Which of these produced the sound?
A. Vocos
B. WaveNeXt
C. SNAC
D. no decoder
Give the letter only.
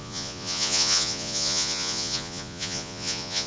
A